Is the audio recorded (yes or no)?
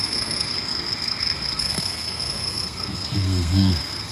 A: no